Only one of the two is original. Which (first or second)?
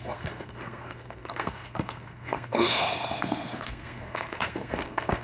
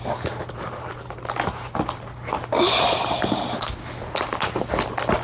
second